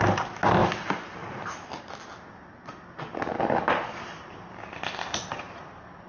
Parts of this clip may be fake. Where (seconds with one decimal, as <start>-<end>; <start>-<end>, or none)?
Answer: none